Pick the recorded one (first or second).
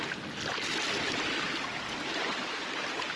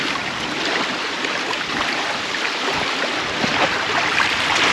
first